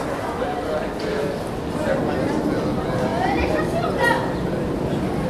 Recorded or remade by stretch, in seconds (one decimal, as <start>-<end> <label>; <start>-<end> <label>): 0.0-3.1 recorded; 3.1-3.6 remade; 3.6-5.3 recorded